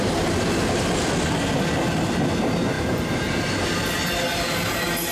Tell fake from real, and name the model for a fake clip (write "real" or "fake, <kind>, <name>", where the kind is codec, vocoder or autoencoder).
real